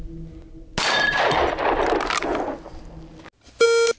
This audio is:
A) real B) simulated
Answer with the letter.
A